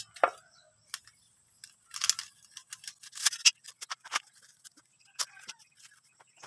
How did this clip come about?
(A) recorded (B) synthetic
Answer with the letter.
A